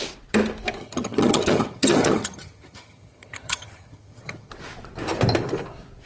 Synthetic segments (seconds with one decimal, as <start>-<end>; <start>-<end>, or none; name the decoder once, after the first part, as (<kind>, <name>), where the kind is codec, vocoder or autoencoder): 0.8-4.5 (vocoder, HiFi-GAN)